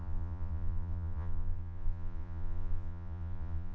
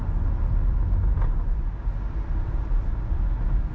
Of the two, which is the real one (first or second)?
second